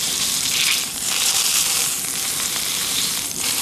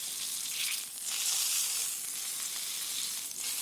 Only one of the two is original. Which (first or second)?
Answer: second